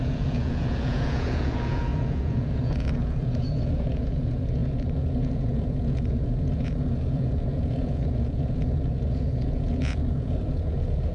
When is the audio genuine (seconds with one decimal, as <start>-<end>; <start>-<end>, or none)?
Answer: none